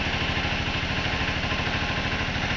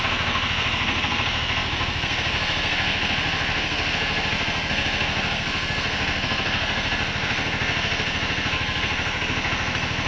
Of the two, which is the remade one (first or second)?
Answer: second